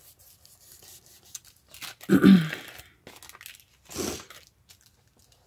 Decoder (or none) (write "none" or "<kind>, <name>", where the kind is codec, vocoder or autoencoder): none